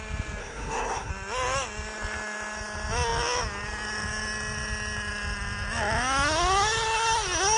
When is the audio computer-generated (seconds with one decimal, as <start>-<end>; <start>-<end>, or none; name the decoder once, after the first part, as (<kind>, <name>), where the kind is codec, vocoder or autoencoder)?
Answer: 0.4-1.1 (codec, SNAC)